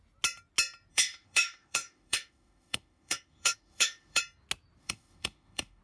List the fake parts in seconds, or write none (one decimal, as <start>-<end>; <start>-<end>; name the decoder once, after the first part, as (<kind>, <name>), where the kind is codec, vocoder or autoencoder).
0.9-4.2 (autoencoder, DAC-VAE); 4.8-5.8